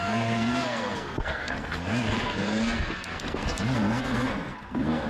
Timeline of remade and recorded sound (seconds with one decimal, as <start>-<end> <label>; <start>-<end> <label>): 0.0-5.1 remade